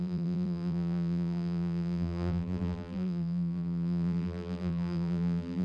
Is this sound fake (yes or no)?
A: yes